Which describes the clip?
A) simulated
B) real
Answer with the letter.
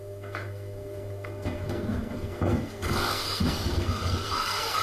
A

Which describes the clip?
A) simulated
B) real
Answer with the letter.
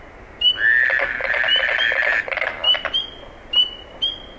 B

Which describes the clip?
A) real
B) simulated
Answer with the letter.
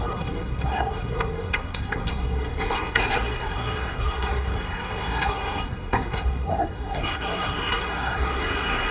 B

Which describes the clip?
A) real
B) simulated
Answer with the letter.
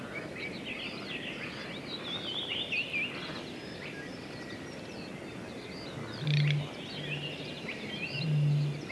A